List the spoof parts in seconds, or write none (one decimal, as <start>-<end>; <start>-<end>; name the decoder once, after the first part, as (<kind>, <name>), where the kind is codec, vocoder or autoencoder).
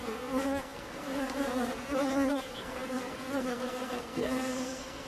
0.0-5.1 (codec, SNAC)